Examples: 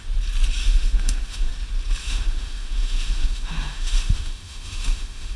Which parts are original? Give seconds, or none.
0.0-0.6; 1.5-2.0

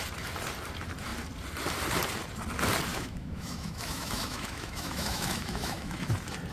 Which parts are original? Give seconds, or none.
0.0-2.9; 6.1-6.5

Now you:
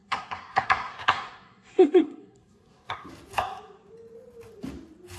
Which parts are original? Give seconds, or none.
3.1-5.2

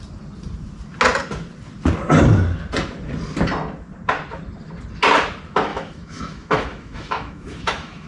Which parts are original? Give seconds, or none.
0.0-5.7